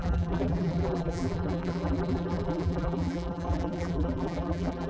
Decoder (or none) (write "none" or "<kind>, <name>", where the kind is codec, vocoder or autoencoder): vocoder, BigVGAN v2